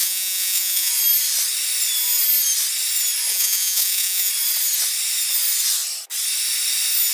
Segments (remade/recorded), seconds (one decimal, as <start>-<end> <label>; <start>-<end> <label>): 0.0-0.9 remade; 0.9-3.3 recorded; 3.3-4.3 remade; 4.3-7.1 recorded

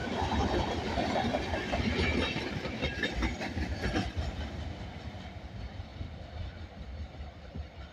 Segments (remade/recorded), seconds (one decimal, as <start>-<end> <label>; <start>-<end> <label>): 0.0-7.9 remade

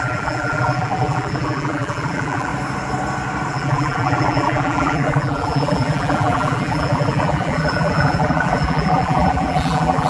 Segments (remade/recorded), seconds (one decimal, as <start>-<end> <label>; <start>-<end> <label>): 0.0-2.5 remade; 2.5-3.5 recorded; 3.5-10.1 remade

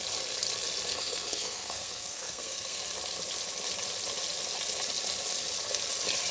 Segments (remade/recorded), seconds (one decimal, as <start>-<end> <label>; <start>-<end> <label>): 0.0-0.9 recorded; 0.9-2.8 remade; 2.8-6.3 recorded

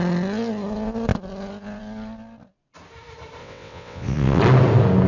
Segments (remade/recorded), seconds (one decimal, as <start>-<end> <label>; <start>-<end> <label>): 0.0-3.4 recorded; 3.4-4.4 remade; 4.4-5.1 recorded

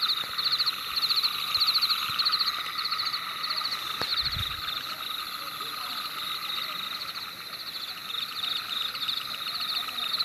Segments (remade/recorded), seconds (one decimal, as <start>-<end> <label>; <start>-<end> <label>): 0.0-10.2 recorded

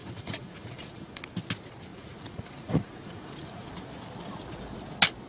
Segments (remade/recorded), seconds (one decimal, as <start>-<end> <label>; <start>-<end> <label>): 0.0-1.2 remade; 1.2-1.9 recorded; 1.9-3.7 remade; 3.7-5.3 recorded

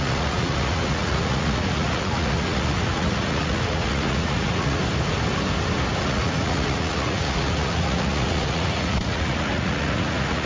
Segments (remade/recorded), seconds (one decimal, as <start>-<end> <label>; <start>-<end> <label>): 0.0-4.8 remade; 4.8-6.0 recorded; 6.0-10.5 remade